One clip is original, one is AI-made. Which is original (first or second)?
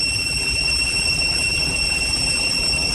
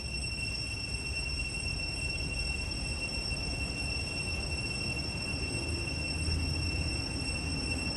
second